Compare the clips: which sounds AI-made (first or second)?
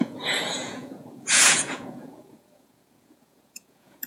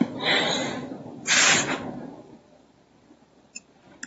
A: first